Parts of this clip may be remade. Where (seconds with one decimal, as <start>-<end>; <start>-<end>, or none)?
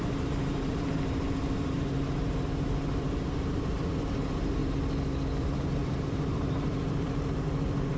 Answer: 0.0-4.6; 5.4-8.0